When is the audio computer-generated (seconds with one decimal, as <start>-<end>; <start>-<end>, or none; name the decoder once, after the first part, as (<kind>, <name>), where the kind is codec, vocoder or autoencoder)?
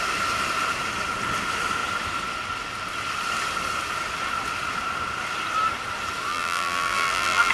6.3-7.5 (vocoder, BigVGAN v2)